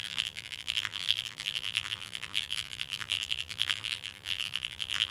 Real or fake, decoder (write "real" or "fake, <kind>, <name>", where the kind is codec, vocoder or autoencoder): fake, vocoder, BigVGAN v2